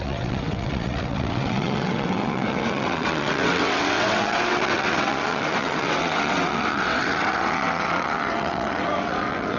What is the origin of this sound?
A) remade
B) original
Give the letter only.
A